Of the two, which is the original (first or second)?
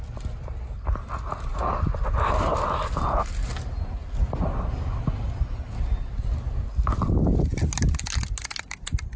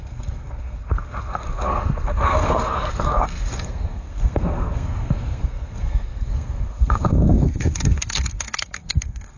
first